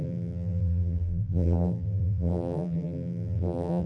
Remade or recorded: remade